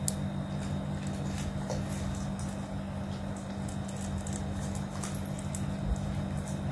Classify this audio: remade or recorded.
recorded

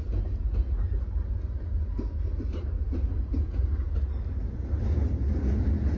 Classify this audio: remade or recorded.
recorded